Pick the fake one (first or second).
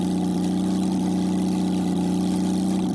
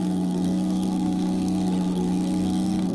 second